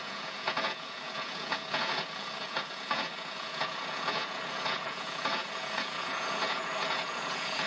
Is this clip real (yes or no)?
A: no